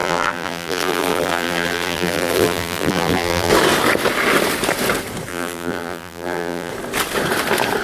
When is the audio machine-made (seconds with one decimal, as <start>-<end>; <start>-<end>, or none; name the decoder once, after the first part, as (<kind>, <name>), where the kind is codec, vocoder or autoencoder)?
0.0-3.5 (vocoder, BigVGAN v2); 5.3-6.7

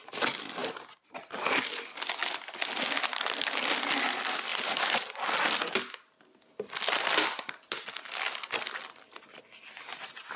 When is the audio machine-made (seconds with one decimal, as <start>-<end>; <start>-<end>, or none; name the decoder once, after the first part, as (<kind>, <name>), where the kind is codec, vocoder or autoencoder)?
0.6-1.7 (vocoder, BigVGAN v2); 4.5-5.3